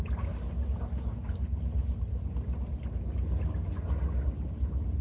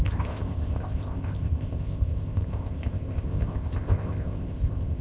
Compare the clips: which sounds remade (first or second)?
second